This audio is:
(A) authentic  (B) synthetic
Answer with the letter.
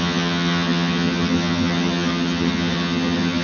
B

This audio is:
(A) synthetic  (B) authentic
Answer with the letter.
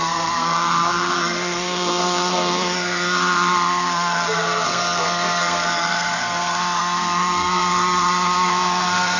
A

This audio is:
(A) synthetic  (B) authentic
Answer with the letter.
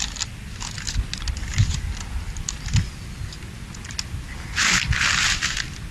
B